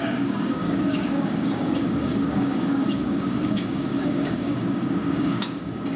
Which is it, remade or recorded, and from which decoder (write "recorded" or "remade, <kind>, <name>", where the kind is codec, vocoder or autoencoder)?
remade, codec, DAC